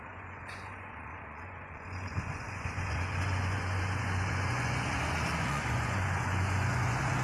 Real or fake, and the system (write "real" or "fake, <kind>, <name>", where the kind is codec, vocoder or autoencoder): fake, vocoder, Vocos